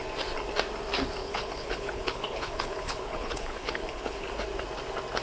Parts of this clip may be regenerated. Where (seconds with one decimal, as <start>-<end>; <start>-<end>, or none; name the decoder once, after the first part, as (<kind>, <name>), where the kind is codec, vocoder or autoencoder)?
1.2-4.3 (codec, HILCodec)